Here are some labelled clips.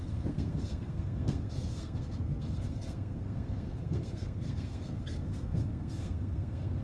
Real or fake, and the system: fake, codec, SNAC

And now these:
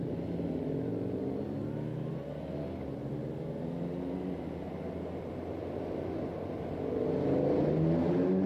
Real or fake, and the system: real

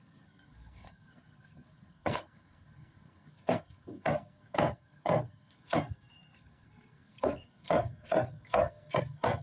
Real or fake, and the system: fake, codec, SNAC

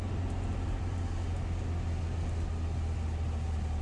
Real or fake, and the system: real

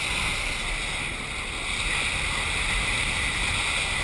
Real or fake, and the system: real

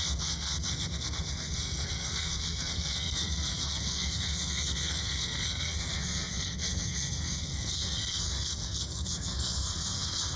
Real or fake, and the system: fake, codec, SNAC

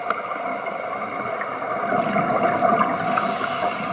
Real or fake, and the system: real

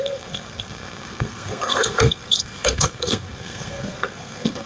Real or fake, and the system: fake, codec, SNAC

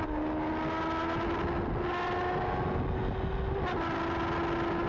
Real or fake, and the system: real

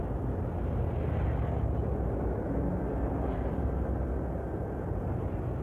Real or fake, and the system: real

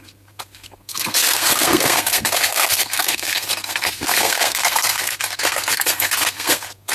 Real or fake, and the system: fake, codec, SNAC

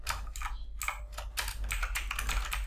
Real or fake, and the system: real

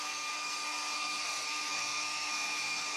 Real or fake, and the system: fake, codec, SNAC